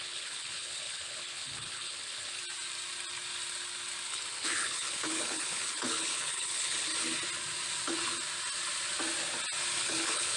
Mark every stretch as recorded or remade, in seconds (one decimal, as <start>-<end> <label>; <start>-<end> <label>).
0.0-2.4 remade; 2.4-4.1 recorded; 4.1-6.9 remade; 6.9-9.8 recorded; 9.8-10.4 remade